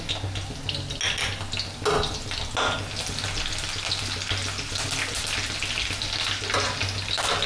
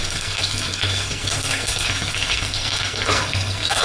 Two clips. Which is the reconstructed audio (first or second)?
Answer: second